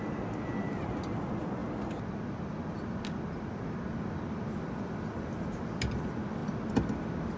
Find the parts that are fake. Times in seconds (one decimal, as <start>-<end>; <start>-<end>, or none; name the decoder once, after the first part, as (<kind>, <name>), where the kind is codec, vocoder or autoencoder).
none